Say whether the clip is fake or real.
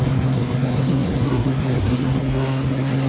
fake